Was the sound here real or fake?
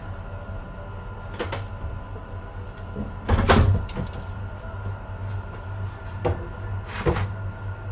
real